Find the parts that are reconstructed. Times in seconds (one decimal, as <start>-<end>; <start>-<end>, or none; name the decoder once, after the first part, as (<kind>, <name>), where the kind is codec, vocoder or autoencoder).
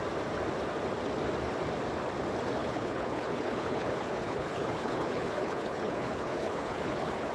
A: 2.6-7.3 (codec, HILCodec)